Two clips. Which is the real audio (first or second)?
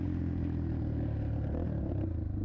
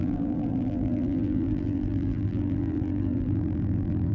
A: first